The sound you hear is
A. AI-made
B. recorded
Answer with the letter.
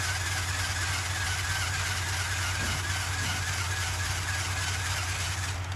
B